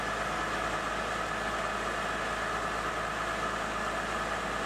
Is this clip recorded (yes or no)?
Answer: yes